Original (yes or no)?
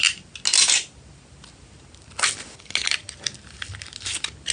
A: yes